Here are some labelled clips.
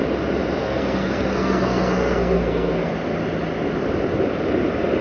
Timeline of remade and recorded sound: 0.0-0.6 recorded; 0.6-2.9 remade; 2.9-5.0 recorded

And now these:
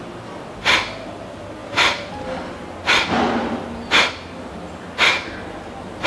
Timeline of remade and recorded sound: 0.0-6.1 recorded

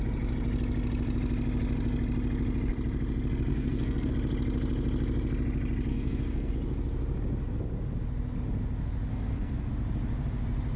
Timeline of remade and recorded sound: 0.0-3.5 recorded; 3.5-4.1 remade; 4.1-5.9 recorded; 5.9-6.5 remade; 6.5-9.1 recorded; 9.1-9.7 remade; 9.7-10.8 recorded

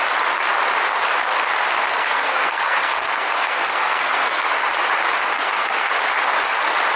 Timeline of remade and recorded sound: 0.0-1.9 recorded; 1.9-4.5 remade; 4.5-5.3 recorded; 5.3-5.9 remade; 5.9-7.0 recorded

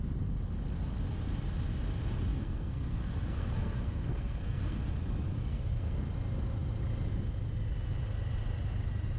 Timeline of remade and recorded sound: 0.0-2.3 recorded; 2.3-4.9 remade; 4.9-5.5 recorded; 5.5-6.0 remade; 6.0-9.2 recorded

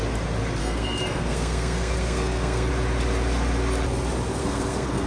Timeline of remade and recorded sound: 0.0-0.6 recorded; 0.6-2.7 remade; 2.7-4.4 recorded; 4.4-5.1 remade

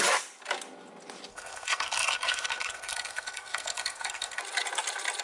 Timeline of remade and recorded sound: 0.0-1.3 recorded; 1.3-4.4 remade; 4.4-5.2 recorded